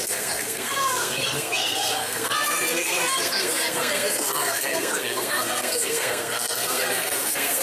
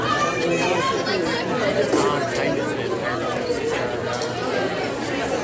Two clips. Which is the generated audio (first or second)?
first